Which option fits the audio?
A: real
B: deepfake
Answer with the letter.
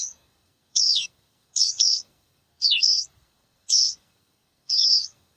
B